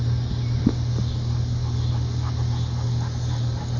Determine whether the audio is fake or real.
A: real